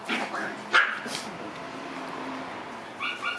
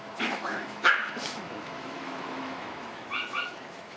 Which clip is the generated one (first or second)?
second